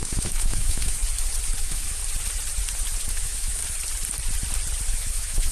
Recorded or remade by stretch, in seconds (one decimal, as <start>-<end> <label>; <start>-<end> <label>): 0.0-1.0 remade; 1.0-1.6 recorded; 1.6-2.0 remade; 2.0-3.1 recorded; 3.1-3.6 remade; 3.6-4.9 recorded; 4.9-5.5 remade